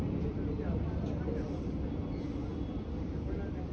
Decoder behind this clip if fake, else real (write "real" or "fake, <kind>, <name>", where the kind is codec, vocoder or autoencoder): real